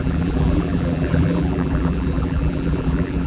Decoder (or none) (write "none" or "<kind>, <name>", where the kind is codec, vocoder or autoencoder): vocoder, BigVGAN v2